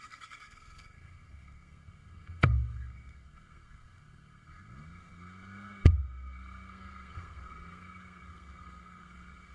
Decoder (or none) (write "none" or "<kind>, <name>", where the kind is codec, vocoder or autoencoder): codec, SNAC